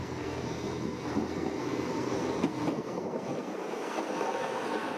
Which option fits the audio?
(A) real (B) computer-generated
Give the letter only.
B